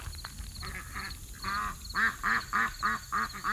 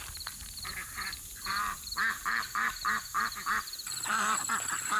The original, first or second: first